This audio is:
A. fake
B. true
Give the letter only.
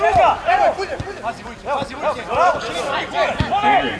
B